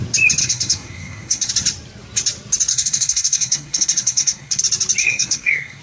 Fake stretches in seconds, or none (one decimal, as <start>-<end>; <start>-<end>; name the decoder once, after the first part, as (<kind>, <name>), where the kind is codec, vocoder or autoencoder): 0.4-1.5 (codec, SNAC); 2.7-4.6; 5.0-5.8